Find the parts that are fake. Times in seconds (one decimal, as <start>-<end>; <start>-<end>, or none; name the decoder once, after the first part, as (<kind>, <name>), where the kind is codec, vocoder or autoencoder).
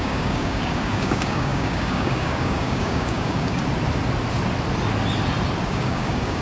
0.0-3.6 (codec, DAC); 5.7-6.4